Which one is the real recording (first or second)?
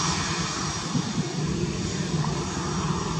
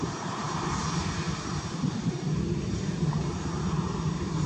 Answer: first